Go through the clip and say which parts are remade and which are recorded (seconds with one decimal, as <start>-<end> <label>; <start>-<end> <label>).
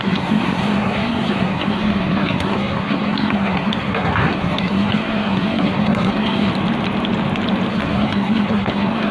0.0-6.5 remade; 6.5-7.7 recorded; 7.7-9.1 remade